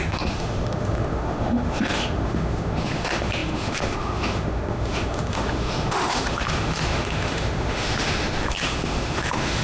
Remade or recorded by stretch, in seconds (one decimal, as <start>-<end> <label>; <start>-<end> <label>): 0.0-9.6 remade